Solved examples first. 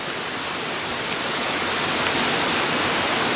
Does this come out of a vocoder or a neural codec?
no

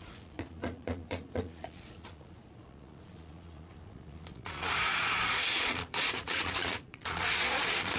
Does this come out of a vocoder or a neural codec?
yes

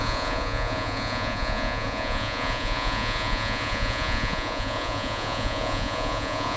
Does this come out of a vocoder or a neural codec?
yes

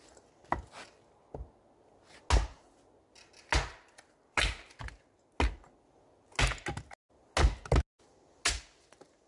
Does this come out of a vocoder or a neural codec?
no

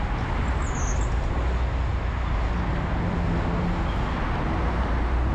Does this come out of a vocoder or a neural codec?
no